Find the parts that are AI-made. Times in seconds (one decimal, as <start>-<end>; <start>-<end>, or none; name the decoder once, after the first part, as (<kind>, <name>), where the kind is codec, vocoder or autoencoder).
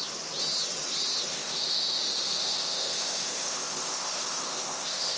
1.3-2.0 (codec, ZipCodec); 2.4-5.2